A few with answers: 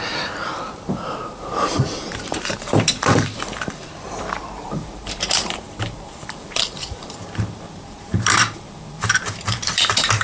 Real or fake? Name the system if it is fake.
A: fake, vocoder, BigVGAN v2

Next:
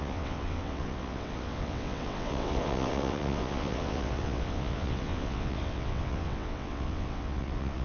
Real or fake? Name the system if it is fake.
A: fake, vocoder, WaveNeXt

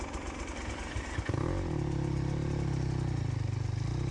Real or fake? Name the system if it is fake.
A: real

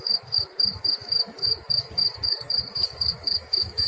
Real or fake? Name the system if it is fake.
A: fake, autoencoder, DAC-VAE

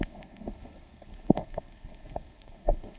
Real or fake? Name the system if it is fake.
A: fake, codec, SNAC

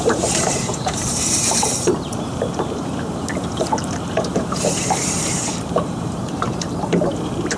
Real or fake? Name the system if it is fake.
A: fake, vocoder, BigVGAN v2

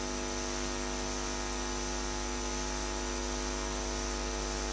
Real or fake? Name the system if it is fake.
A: real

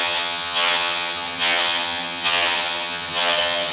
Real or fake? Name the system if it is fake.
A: fake, vocoder, HiFi-GAN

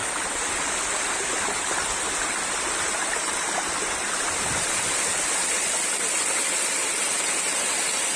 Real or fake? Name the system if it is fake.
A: real